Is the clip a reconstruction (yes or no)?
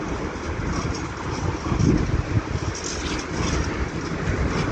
no